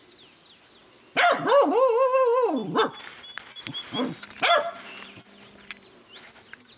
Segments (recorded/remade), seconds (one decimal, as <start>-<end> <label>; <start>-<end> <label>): 0.0-6.8 recorded